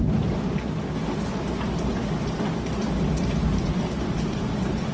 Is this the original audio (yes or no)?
yes